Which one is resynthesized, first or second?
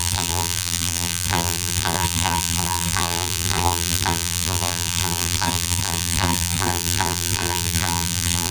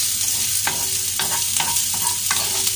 first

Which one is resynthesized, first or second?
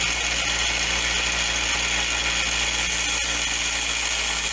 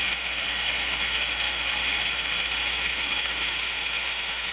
second